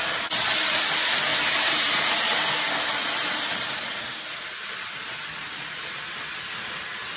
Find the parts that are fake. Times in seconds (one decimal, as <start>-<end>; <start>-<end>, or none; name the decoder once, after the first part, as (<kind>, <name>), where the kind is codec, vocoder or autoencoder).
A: 1.3-2.2 (vocoder, BigVGAN v2)